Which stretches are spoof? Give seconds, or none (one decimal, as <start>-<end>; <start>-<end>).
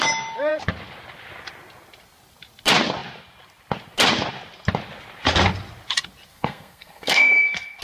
6.3-7.8